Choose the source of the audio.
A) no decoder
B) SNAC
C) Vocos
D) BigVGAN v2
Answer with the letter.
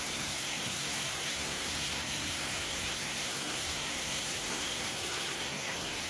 B